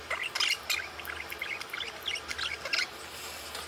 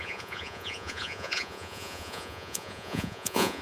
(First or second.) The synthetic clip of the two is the second